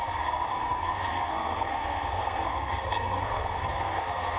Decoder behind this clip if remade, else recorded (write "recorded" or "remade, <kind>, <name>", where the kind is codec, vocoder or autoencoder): remade, codec, SNAC